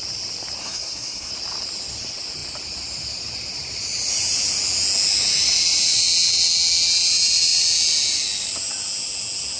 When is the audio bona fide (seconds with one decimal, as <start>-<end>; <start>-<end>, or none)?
0.0-0.6; 1.3-9.6